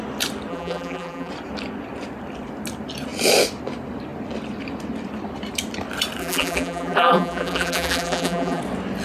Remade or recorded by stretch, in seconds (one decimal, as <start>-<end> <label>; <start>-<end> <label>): 0.0-0.5 recorded; 0.5-1.3 remade; 1.3-6.2 recorded; 6.2-8.6 remade; 8.6-9.0 recorded